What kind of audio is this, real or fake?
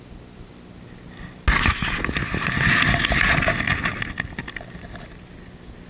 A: real